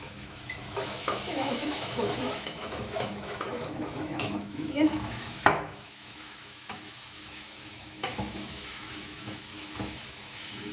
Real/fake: fake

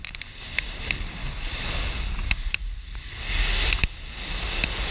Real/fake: real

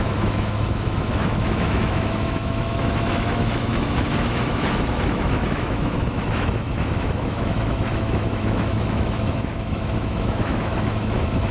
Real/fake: fake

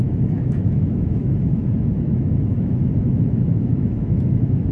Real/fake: fake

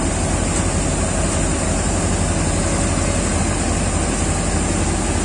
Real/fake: real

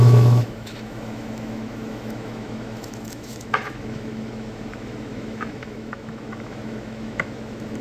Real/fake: fake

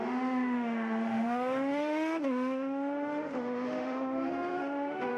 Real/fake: fake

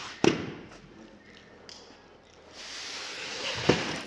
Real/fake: real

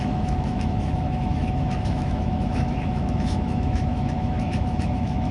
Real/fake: fake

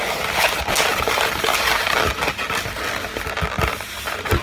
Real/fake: real